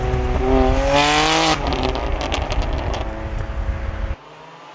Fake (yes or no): no